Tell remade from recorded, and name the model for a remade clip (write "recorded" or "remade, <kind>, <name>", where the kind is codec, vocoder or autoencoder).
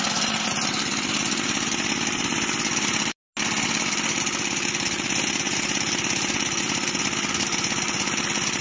recorded